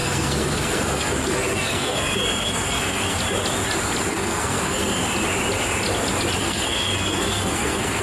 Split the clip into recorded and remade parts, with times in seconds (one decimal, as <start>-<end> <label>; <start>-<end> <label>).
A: 0.0-3.2 remade; 3.2-4.1 recorded; 4.1-5.0 remade; 5.0-6.4 recorded; 6.4-8.0 remade